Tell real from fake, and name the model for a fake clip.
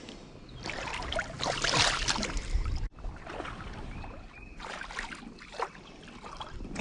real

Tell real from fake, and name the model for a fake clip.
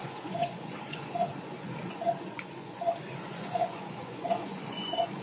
fake, vocoder, Vocos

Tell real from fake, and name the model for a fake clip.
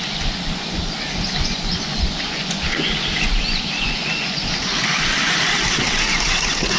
fake, vocoder, Vocos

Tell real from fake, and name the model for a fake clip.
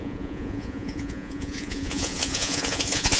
fake, vocoder, Vocos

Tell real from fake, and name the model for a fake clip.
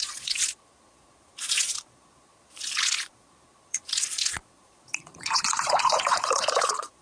fake, vocoder, Vocos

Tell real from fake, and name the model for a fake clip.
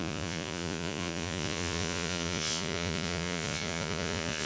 fake, vocoder, Vocos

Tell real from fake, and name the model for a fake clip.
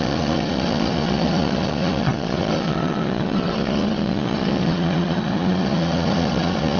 fake, vocoder, Vocos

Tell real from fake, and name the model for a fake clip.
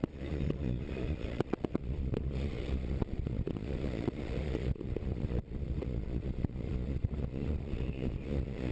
fake, vocoder, Vocos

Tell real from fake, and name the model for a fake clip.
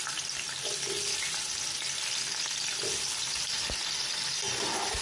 real